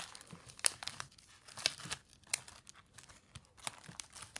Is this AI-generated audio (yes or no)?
yes